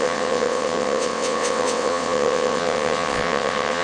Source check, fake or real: fake